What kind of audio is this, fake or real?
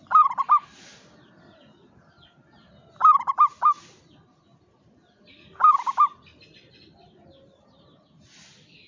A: real